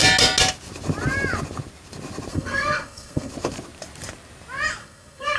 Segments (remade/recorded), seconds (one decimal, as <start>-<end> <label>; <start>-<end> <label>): 0.0-2.3 recorded; 2.3-3.3 remade; 3.3-4.8 recorded; 4.8-5.4 remade